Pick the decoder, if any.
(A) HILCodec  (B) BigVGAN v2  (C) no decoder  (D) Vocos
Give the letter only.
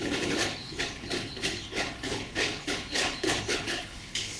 A